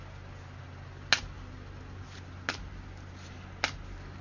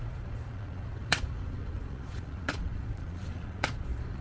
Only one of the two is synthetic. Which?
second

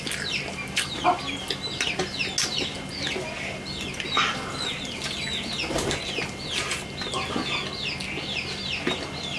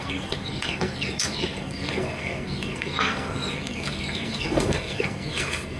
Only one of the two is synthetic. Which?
second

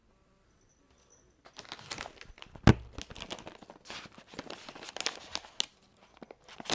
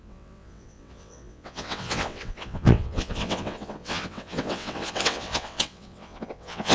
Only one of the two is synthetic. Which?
second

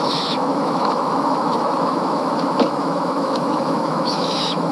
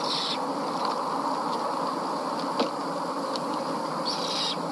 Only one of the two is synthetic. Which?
first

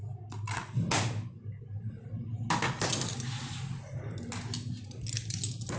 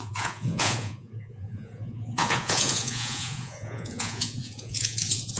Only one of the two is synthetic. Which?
second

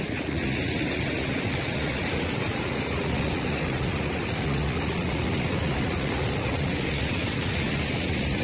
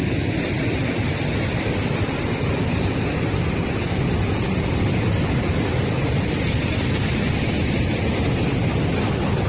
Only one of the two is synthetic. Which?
first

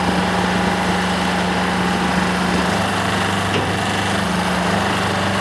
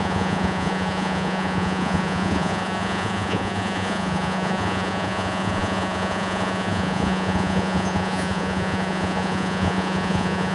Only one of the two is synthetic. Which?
second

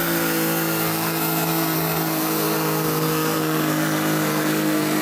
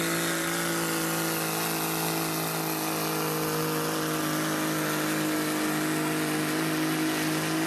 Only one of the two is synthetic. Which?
first